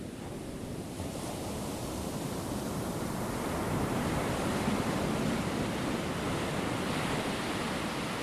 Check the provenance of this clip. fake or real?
real